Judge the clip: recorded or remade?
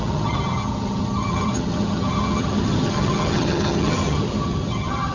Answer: remade